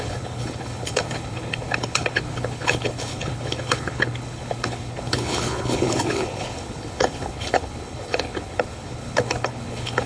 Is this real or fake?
fake